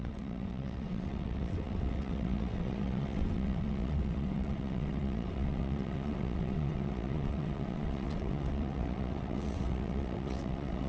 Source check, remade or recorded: remade